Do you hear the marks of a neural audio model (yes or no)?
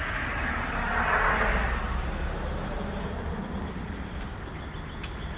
no